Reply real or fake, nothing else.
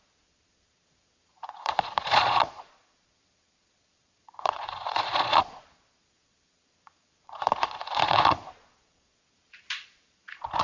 fake